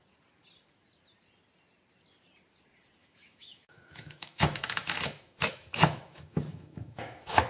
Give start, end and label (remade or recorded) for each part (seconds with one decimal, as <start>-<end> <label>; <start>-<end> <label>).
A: 0.0-3.0 recorded; 3.0-7.5 remade